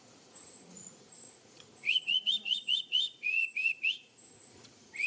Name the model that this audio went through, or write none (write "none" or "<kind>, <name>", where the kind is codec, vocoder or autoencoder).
vocoder, Vocos